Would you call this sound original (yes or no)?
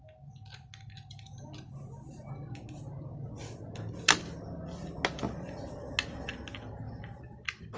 yes